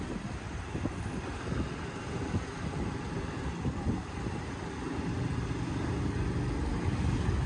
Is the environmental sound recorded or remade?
recorded